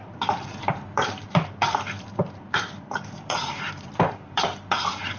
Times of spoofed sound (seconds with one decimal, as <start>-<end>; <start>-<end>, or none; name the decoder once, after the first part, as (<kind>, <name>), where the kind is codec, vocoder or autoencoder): 0.0-5.2 (vocoder, BigVGAN v2)